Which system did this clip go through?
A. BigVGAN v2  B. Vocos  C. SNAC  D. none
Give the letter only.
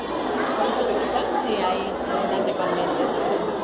D